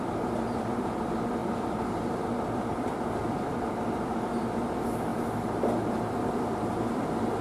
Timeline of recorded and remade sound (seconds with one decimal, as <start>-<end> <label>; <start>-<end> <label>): 0.0-5.1 remade; 5.1-5.9 recorded; 5.9-7.4 remade